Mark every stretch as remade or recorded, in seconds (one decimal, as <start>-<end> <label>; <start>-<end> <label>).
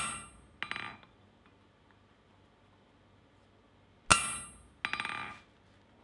0.0-6.0 recorded